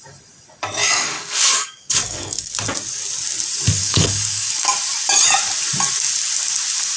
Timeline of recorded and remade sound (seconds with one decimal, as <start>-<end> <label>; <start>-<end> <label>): 0.0-0.8 recorded; 0.8-2.5 remade; 2.5-3.8 recorded; 3.8-4.7 remade; 4.7-7.0 recorded